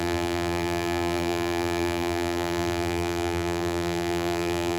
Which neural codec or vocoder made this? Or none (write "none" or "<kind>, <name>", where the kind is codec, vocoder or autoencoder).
vocoder, BigVGAN v2